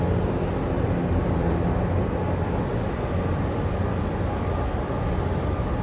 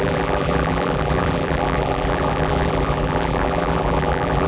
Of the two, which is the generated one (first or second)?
second